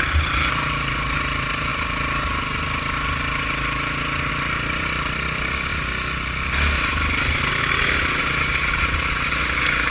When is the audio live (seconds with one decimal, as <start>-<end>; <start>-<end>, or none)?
0.0-9.9